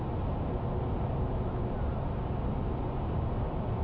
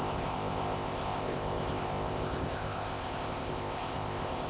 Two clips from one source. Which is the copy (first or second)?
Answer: second